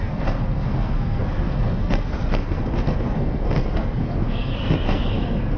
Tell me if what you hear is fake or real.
fake